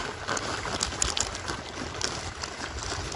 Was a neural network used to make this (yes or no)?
no